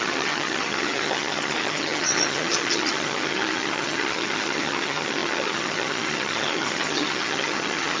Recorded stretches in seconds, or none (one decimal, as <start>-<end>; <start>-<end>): none